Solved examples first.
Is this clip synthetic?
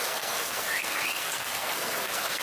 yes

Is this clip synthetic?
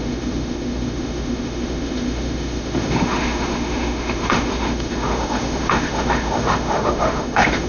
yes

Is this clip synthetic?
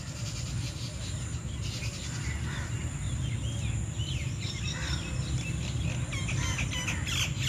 no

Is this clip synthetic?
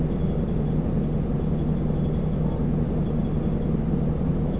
yes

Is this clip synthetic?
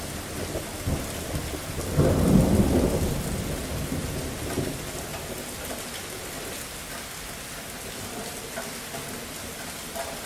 no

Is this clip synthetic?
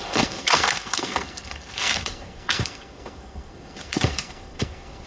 yes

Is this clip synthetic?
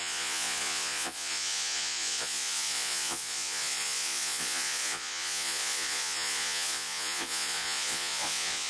yes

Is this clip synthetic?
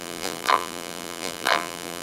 yes